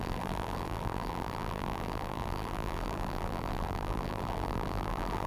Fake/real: fake